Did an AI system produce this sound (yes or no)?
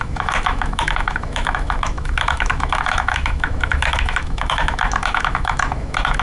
yes